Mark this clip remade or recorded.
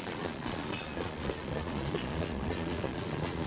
remade